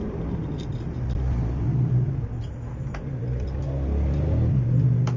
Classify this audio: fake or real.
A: real